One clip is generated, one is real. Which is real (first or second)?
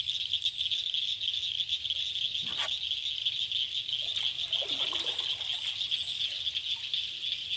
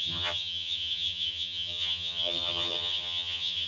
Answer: first